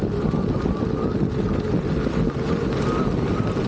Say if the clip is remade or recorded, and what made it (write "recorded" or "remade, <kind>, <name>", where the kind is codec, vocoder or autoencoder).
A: recorded